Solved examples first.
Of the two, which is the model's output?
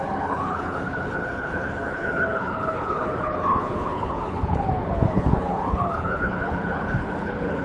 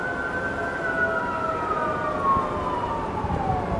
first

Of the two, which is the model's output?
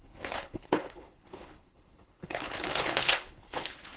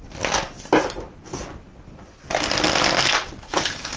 first